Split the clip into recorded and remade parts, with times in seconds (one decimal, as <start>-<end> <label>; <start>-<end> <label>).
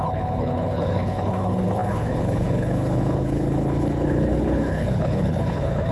0.0-5.9 remade